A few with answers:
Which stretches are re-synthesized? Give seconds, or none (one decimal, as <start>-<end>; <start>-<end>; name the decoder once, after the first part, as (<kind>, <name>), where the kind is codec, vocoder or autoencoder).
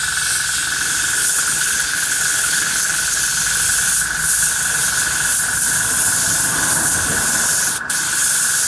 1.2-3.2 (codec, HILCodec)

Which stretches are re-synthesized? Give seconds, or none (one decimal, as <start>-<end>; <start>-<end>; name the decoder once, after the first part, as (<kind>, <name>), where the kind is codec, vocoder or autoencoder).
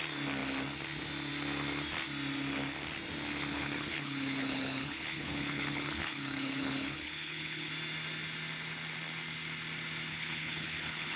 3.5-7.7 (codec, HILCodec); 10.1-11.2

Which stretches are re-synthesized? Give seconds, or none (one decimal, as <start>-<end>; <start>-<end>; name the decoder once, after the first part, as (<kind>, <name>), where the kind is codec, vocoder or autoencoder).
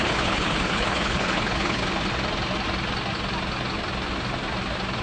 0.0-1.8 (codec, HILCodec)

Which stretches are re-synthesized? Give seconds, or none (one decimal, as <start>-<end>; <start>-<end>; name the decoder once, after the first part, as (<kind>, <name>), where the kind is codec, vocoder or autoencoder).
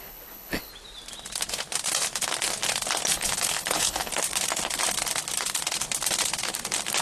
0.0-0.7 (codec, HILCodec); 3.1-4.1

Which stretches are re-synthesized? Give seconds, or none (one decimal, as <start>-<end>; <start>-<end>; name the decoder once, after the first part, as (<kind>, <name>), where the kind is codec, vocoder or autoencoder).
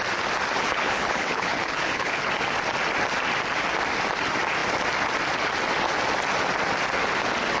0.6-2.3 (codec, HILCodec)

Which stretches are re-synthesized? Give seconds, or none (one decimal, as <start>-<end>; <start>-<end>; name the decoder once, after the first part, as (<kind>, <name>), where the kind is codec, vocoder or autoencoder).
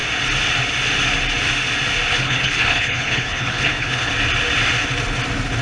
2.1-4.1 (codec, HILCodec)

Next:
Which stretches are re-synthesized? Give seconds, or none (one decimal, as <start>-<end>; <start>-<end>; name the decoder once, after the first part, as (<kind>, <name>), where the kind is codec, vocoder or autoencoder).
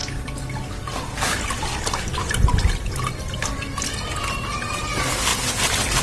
none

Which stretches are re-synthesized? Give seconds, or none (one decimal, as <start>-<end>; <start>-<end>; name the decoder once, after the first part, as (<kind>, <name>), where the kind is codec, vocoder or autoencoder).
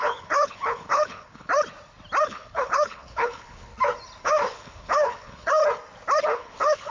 0.0-1.5 (codec, HILCodec); 2.2-3.7; 4.2-5.6; 6.2-6.9